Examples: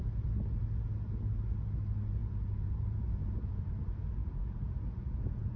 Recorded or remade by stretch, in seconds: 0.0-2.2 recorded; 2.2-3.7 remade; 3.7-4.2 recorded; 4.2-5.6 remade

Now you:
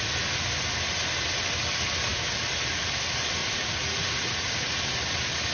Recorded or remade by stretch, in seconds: 0.0-3.4 recorded; 3.4-4.8 remade; 4.8-5.5 recorded

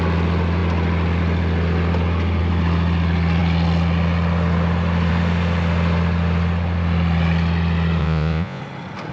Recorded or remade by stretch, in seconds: 0.0-8.0 recorded; 8.0-8.6 remade; 8.6-9.1 recorded

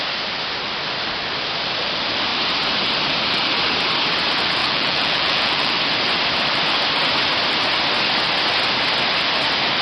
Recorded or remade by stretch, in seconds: 0.0-4.6 recorded; 4.6-5.7 remade; 5.7-9.8 recorded

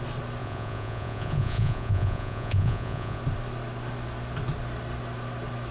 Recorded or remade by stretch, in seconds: 0.0-0.4 recorded; 0.4-3.2 remade; 3.2-5.7 recorded

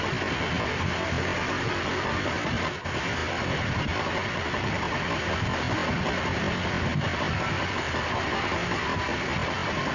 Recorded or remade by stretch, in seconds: 0.0-9.9 recorded

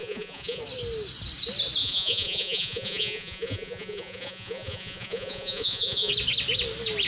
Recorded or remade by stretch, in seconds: 0.0-0.6 remade; 0.6-1.8 recorded; 1.8-6.1 remade; 6.1-7.1 recorded